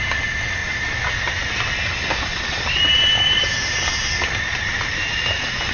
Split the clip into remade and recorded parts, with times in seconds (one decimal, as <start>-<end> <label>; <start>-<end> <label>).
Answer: 0.0-2.3 recorded; 2.3-5.7 remade